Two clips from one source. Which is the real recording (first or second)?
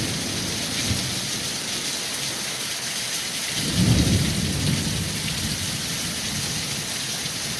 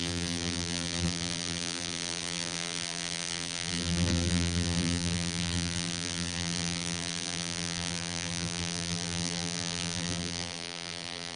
first